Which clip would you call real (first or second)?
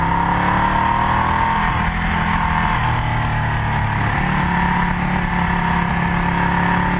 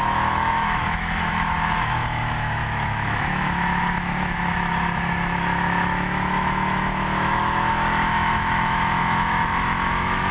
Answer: first